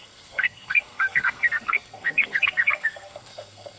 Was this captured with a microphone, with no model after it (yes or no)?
no